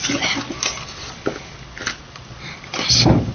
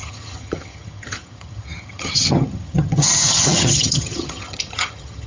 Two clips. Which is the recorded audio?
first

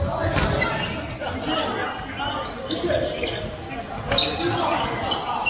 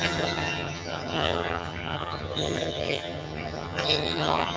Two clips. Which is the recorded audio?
first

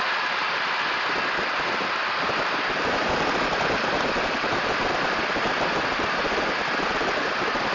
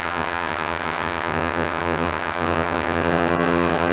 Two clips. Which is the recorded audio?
first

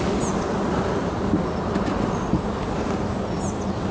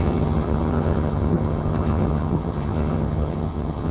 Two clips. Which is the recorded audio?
first